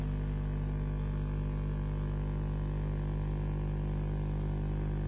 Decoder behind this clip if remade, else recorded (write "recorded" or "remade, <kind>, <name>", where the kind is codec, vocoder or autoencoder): recorded